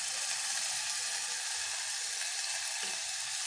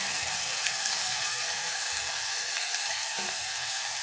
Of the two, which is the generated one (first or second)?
second